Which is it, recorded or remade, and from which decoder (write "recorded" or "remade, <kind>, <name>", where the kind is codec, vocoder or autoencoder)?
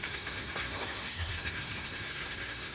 remade, codec, SNAC